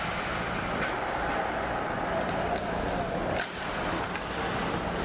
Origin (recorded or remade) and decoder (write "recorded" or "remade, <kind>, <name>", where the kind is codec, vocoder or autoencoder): recorded